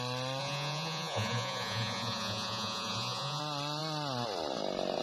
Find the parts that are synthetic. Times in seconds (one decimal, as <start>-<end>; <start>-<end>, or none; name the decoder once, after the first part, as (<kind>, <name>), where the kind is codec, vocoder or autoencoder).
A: 0.4-3.4 (vocoder, Vocos)